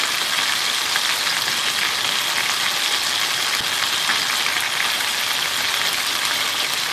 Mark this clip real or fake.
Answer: real